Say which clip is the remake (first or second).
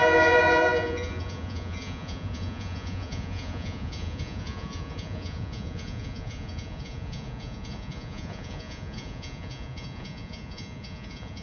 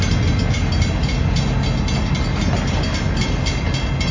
first